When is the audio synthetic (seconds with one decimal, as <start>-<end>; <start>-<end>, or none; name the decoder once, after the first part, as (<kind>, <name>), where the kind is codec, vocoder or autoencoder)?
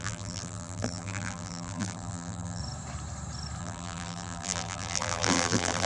0.0-2.6 (vocoder, BigVGAN v2); 3.6-5.9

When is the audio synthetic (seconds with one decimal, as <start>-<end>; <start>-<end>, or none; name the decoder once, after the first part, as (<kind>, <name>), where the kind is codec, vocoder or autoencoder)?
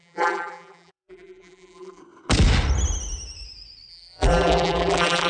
0.0-2.0 (vocoder, BigVGAN v2); 3.9-5.3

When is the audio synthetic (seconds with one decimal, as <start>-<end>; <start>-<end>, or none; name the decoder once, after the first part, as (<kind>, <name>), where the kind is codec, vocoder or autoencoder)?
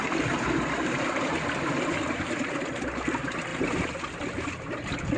0.0-3.5 (vocoder, BigVGAN v2)